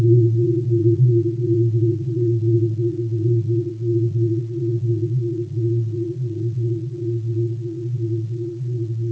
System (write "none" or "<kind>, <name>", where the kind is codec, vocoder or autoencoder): vocoder, Vocos